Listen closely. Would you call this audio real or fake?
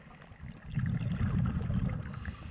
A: real